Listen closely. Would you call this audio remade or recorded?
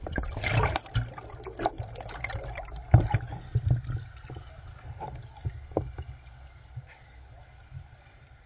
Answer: recorded